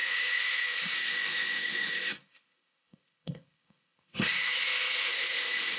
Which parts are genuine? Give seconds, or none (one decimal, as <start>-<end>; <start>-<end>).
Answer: none